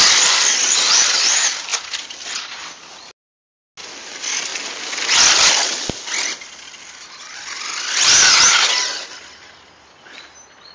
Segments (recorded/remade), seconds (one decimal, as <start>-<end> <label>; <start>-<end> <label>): 0.0-10.7 recorded